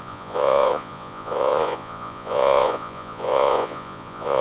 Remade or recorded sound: remade